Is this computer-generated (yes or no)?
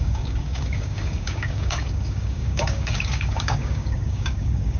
yes